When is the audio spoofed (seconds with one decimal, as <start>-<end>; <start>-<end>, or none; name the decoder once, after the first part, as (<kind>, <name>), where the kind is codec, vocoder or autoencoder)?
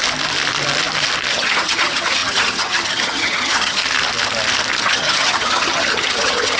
1.3-3.8 (vocoder, HiFi-GAN); 4.8-6.6